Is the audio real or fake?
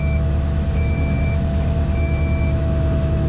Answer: fake